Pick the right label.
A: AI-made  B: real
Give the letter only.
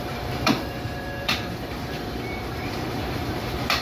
A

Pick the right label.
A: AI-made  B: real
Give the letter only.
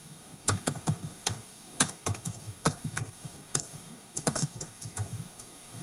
A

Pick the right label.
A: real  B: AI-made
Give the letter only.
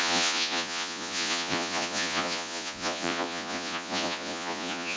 B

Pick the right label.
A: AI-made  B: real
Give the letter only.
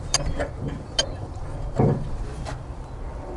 B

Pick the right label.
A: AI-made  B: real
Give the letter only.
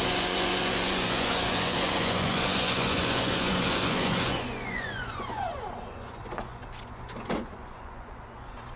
A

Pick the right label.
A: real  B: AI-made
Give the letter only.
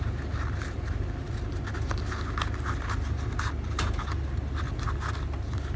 A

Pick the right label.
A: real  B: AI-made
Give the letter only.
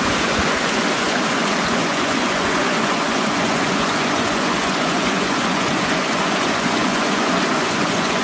B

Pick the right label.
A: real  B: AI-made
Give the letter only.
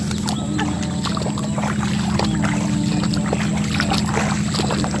A